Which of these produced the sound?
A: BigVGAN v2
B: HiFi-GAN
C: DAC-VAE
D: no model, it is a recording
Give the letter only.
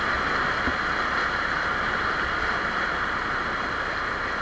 D